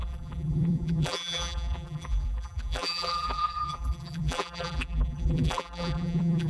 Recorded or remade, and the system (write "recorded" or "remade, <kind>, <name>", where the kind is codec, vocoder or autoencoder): remade, vocoder, BigVGAN v2